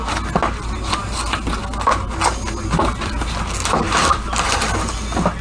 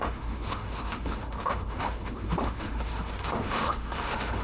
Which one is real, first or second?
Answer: first